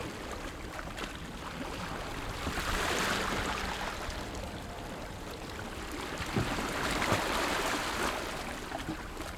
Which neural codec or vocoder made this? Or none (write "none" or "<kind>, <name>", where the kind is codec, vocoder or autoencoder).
none